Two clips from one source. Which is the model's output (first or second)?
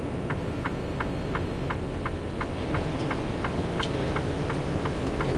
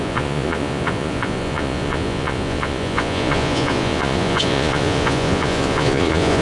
second